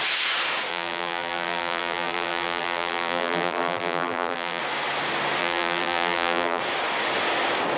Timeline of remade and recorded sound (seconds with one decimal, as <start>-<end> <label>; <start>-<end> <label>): 0.0-0.7 recorded; 0.7-4.6 remade; 4.6-5.4 recorded; 5.4-6.6 remade; 6.6-7.8 recorded